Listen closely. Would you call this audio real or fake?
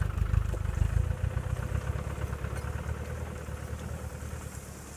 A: real